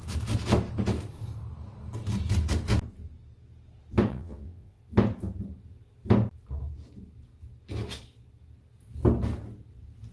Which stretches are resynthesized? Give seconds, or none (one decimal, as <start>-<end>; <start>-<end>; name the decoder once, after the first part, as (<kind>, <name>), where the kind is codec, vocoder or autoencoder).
4.1-4.8 (vocoder, WaveNeXt)